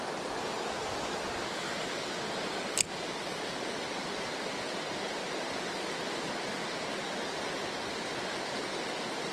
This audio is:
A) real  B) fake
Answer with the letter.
A